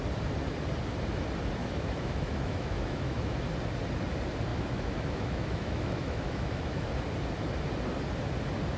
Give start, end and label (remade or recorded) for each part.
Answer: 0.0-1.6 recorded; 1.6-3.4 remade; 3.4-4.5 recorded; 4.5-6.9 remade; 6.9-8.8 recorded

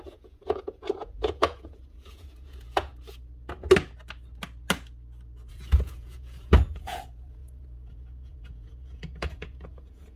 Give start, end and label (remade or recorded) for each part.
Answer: 0.0-2.9 remade; 2.9-5.5 recorded; 5.5-10.2 remade

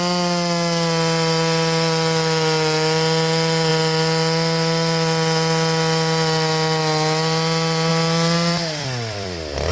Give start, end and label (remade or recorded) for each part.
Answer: 0.0-7.9 recorded; 7.9-9.7 remade

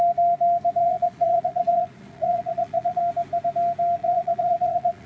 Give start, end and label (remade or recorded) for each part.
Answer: 0.0-0.8 recorded; 0.8-3.0 remade; 3.0-4.0 recorded; 4.0-5.1 remade